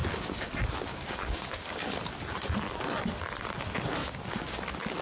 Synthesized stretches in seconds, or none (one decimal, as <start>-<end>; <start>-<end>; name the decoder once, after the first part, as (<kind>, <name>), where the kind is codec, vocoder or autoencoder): 0.0-0.5 (codec, DAC); 0.9-1.9; 4.0-4.6